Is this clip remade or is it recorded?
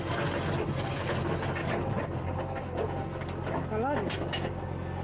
recorded